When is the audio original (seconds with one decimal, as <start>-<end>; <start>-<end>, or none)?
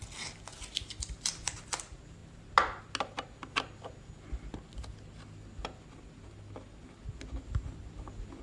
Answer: 0.0-8.4